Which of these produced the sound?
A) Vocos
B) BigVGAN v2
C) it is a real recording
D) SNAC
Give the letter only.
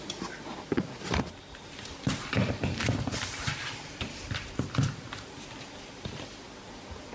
B